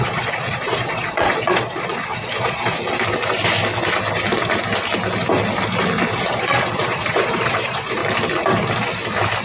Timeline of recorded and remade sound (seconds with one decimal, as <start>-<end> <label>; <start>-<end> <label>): 0.0-2.7 remade; 2.7-6.4 recorded; 6.4-8.0 remade; 8.0-9.4 recorded